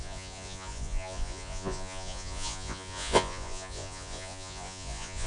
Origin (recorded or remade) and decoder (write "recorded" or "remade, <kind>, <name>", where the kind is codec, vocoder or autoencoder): remade, vocoder, Vocos